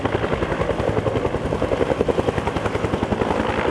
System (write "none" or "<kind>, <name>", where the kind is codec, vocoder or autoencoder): none